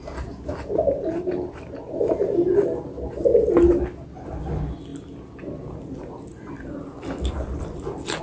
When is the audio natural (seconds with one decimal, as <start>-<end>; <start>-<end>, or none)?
0.0-1.3; 3.5-8.2